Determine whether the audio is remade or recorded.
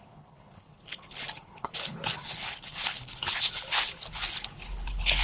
remade